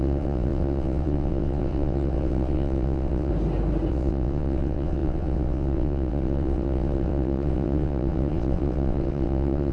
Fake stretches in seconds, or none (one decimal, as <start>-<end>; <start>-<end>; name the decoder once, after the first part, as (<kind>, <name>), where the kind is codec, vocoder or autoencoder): 0.0-3.3 (vocoder, WaveNeXt); 3.9-9.7